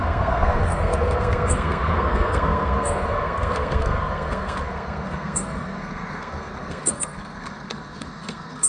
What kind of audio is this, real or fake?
fake